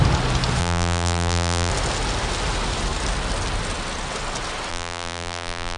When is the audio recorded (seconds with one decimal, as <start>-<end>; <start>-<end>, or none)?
0.0-0.6; 1.7-4.7

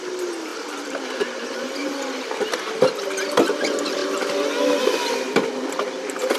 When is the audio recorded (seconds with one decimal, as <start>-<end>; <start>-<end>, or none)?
0.0-0.5; 1.4-1.8; 2.7-6.4

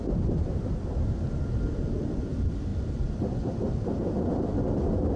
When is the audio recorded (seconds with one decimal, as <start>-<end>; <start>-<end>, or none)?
0.0-2.7; 3.7-5.2

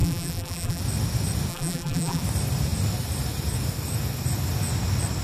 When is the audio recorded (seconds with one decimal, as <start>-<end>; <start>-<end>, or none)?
0.8-1.5; 2.2-5.2

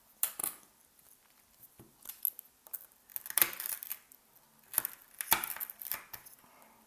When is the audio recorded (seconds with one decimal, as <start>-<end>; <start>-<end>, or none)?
0.0-6.9

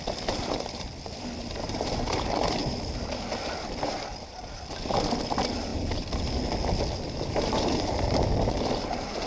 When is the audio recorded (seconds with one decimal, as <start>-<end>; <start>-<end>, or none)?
0.0-2.6; 3.2-4.1; 5.2-5.7; 8.8-9.3

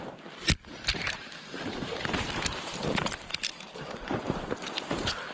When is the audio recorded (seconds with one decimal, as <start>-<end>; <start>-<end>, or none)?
0.0-0.9; 4.1-5.3

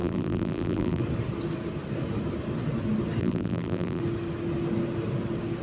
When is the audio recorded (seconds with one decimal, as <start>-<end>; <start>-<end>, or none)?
1.0-3.2; 4.0-5.6